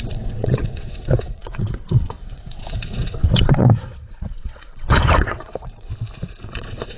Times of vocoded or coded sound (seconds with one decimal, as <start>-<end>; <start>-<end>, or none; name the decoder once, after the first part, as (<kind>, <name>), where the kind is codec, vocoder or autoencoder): 0.0-5.9 (vocoder, WaveNeXt); 6.4-7.0